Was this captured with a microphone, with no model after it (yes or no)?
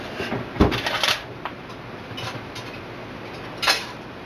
yes